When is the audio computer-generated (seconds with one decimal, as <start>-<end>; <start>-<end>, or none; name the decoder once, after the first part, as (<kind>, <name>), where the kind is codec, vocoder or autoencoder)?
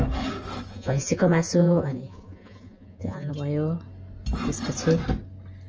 0.7-3.3 (vocoder, Vocos)